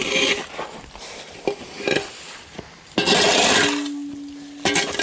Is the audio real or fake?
real